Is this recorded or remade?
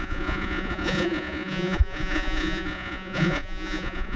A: remade